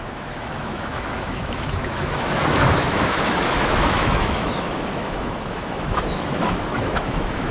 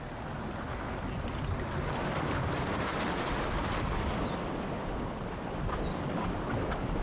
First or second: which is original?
second